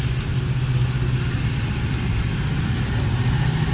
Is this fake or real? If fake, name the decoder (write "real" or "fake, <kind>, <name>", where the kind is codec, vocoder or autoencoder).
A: real